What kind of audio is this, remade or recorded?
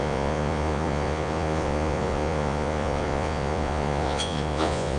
remade